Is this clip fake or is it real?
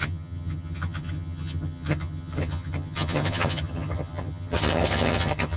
fake